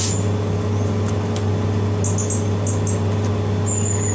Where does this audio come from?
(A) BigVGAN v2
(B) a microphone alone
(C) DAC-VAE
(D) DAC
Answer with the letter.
B